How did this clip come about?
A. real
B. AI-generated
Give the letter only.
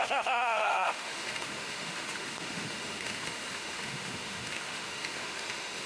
B